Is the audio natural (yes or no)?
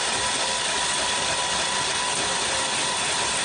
yes